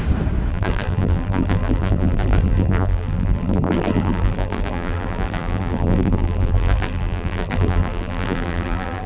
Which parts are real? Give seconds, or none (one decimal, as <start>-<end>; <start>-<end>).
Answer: 0.0-0.5